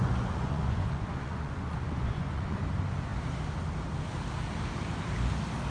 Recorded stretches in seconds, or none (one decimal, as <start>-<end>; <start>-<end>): 2.6-5.7